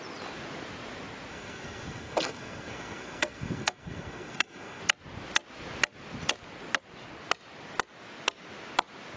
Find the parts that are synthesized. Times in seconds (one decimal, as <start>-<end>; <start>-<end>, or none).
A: 1.3-4.8